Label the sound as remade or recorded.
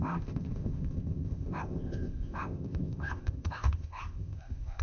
remade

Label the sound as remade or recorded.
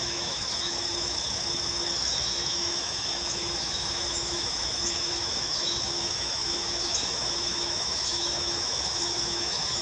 remade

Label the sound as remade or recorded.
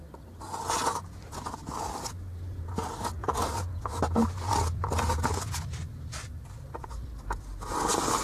recorded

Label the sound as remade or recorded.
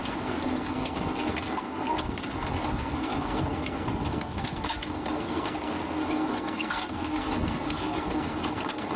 remade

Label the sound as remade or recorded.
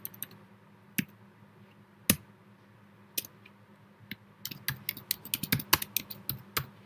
recorded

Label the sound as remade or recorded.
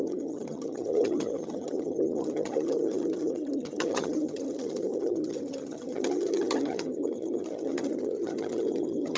remade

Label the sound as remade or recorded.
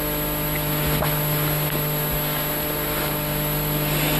recorded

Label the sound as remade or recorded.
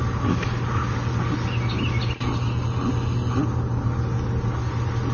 recorded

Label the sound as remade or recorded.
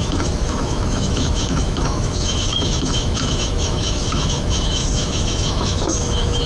remade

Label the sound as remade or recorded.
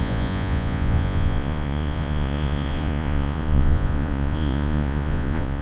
remade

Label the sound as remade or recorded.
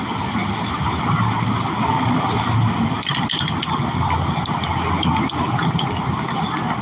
recorded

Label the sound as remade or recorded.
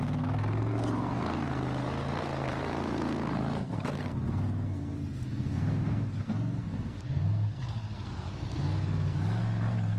remade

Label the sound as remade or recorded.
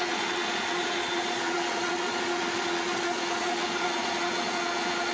remade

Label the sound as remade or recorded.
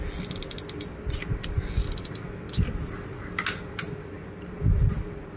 recorded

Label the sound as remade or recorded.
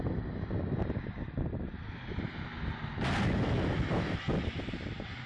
recorded